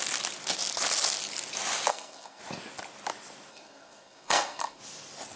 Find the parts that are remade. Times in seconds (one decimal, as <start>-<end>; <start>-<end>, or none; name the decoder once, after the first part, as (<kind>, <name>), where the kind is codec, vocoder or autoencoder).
1.9-2.4 (codec, SNAC); 3.5-4.8